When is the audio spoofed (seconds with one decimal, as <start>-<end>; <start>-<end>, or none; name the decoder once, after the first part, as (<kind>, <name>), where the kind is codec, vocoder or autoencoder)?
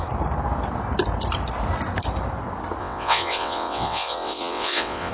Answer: 2.8-5.1 (vocoder, WaveNeXt)